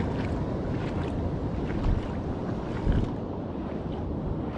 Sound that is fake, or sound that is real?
real